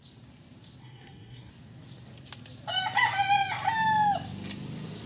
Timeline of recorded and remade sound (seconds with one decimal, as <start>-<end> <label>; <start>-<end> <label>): 0.0-0.8 recorded; 0.8-1.5 remade; 1.5-5.1 recorded